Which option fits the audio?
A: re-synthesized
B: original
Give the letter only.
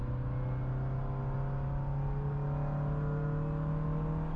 B